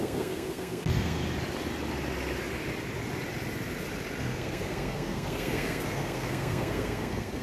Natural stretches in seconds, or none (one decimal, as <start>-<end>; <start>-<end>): 1.2-4.2